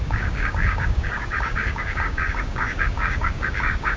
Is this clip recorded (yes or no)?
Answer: no